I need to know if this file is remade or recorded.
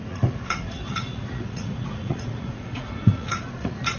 remade